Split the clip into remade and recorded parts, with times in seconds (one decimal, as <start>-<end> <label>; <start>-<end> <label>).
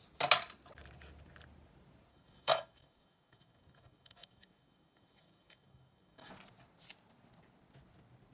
0.0-2.1 recorded; 2.1-6.3 remade; 6.3-8.3 recorded